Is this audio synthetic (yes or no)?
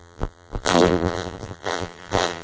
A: yes